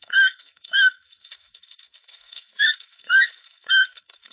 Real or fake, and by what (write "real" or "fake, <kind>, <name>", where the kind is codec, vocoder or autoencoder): fake, codec, SNAC